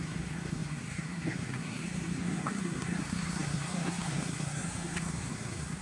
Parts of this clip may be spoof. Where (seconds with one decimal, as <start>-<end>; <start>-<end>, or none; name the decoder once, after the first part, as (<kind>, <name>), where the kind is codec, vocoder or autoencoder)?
0.0-5.8 (codec, SNAC)